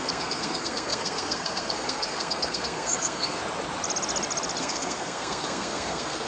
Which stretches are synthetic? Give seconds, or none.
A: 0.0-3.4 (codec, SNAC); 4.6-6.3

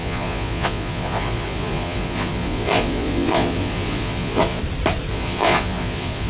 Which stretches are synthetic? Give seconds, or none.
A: 0.0-4.6 (vocoder, Vocos); 5.1-6.3

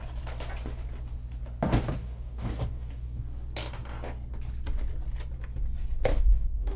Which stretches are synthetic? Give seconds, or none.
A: 2.0-3.2 (codec, DAC); 6.1-6.8